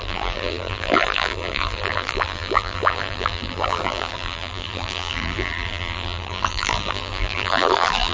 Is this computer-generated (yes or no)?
yes